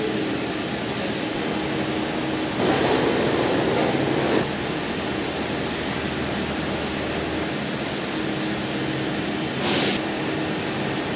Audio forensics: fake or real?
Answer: real